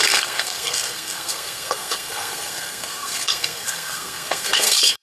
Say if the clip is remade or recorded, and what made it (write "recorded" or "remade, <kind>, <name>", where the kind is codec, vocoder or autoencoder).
remade, codec, SNAC